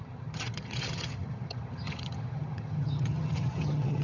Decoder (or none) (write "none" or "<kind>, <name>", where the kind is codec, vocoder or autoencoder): vocoder, HiFi-GAN